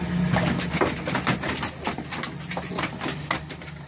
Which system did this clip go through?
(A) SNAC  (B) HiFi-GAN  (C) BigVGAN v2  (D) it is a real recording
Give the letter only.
D